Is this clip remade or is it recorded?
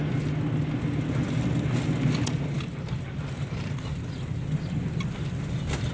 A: recorded